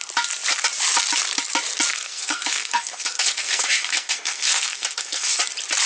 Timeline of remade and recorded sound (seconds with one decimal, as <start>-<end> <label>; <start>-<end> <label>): 0.0-1.9 recorded; 1.9-5.4 remade; 5.4-5.9 recorded